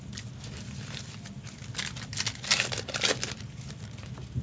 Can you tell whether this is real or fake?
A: real